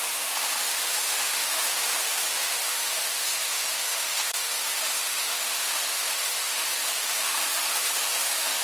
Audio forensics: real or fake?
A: fake